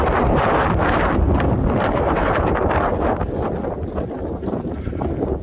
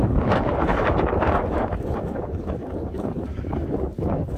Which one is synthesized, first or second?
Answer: second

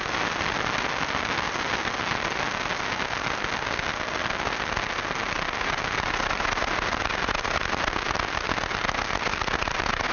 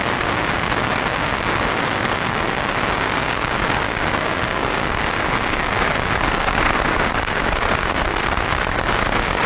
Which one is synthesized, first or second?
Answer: second